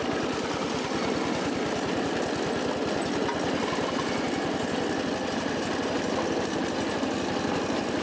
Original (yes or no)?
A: yes